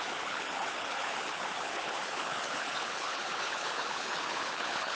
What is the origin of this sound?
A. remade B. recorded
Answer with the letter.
A